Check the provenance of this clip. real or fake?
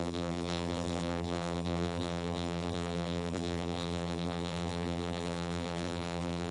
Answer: fake